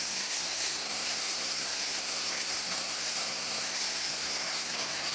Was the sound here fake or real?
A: fake